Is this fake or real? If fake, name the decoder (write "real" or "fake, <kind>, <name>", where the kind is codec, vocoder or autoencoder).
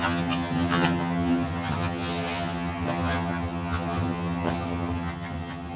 fake, vocoder, HiFi-GAN